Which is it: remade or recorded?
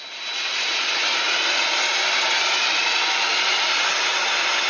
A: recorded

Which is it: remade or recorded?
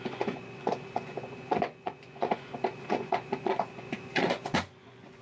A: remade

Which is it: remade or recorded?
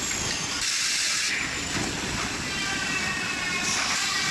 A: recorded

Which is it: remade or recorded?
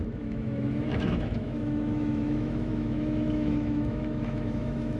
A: remade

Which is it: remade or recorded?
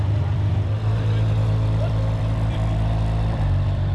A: remade